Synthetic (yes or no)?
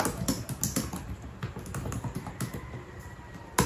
no